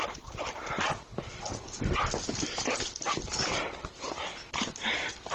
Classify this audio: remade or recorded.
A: recorded